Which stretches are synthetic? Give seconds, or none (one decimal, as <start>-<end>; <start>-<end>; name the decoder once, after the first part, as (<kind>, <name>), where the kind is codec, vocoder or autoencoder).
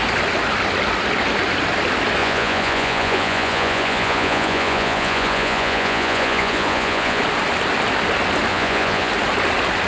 2.2-7.2 (vocoder, Vocos); 8.5-9.1